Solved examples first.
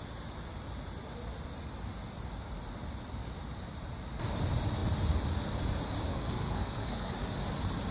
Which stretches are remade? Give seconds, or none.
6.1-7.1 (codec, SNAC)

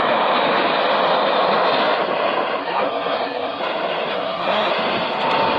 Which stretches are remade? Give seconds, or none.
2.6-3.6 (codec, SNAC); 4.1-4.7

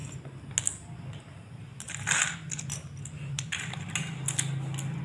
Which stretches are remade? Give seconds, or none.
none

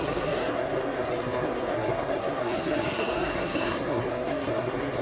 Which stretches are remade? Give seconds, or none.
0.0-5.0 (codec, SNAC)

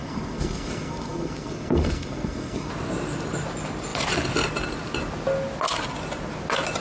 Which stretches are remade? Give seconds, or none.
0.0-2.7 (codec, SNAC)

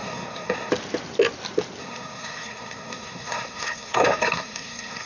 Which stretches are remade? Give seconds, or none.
0.0-0.7 (codec, SNAC); 1.8-5.1